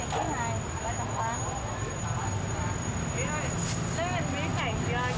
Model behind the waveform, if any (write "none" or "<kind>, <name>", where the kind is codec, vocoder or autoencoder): none